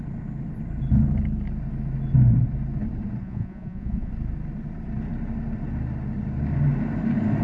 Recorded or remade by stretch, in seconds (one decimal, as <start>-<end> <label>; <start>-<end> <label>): 0.0-3.2 recorded; 3.2-4.1 remade; 4.1-7.4 recorded